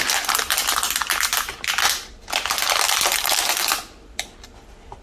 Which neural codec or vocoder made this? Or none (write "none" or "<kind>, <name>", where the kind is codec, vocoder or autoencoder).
none